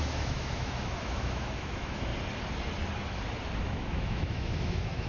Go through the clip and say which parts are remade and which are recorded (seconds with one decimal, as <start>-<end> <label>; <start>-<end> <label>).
0.0-2.1 remade; 2.1-3.6 recorded; 3.6-5.1 remade